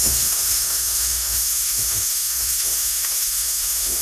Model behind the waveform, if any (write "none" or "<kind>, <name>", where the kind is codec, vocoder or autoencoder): autoencoder, DAC-VAE